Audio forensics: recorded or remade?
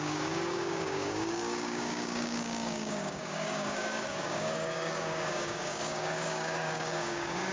remade